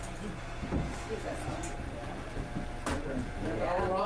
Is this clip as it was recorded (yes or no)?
yes